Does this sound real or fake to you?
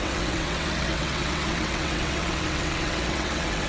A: fake